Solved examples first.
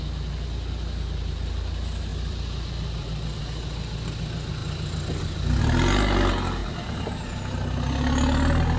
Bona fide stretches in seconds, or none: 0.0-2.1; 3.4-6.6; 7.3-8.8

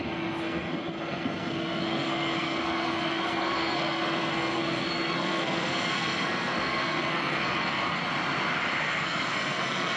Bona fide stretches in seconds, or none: 8.0-8.8

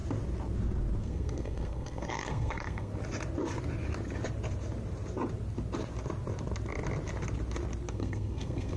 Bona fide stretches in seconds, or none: 0.0-1.0; 2.9-7.9

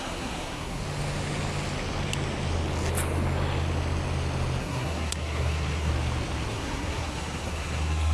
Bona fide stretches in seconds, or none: 0.8-4.6; 5.9-6.5

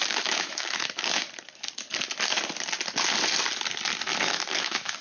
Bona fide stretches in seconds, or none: 1.2-4.2